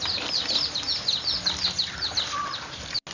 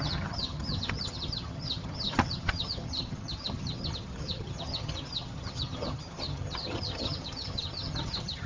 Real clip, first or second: first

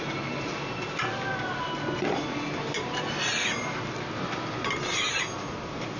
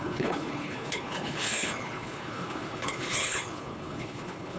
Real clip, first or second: first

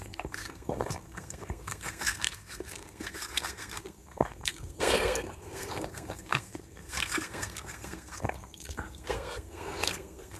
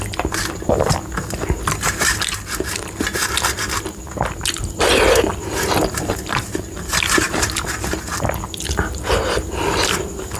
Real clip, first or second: second